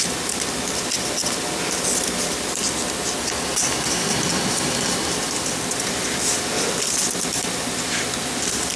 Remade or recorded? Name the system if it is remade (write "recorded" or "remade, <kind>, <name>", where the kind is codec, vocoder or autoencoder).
recorded